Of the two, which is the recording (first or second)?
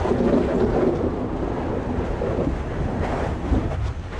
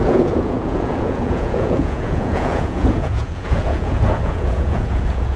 first